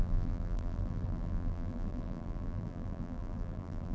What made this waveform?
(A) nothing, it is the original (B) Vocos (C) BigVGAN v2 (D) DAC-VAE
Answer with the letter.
C